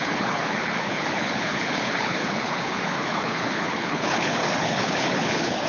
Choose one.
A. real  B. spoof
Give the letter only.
B